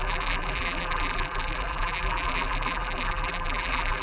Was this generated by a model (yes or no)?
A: yes